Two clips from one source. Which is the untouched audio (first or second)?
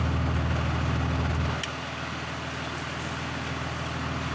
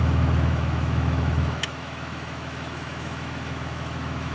first